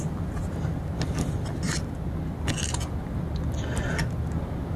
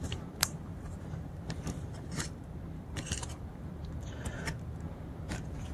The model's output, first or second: second